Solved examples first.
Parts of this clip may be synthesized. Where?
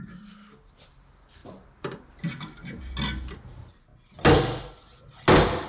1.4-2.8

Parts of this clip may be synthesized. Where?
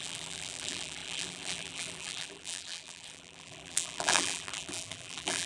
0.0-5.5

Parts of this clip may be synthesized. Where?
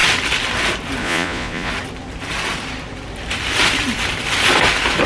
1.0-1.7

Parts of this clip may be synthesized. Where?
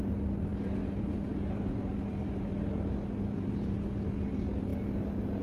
none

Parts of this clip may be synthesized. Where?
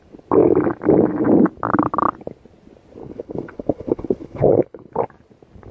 3.0-4.9